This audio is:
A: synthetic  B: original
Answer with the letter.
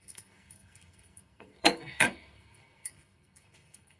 A